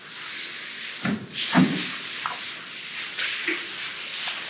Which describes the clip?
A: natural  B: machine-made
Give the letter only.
A